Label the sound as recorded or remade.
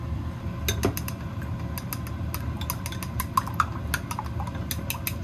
recorded